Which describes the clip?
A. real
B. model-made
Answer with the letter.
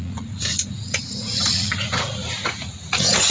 B